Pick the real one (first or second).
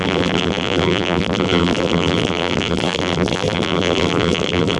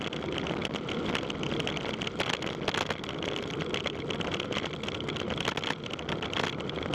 second